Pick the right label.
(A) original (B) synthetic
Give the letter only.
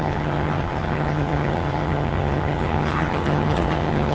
B